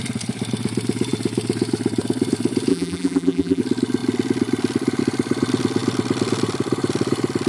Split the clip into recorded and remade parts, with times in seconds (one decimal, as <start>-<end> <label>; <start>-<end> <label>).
0.0-2.7 recorded; 2.7-3.6 remade; 3.6-7.5 recorded